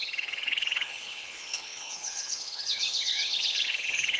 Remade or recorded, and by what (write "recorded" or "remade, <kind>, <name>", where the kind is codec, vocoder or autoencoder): remade, codec, HILCodec